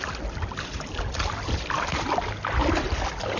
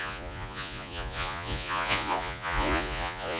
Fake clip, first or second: second